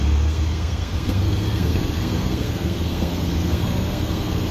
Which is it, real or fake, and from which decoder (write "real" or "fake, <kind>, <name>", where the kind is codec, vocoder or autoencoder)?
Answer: fake, codec, SNAC